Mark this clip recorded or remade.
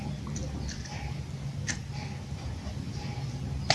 recorded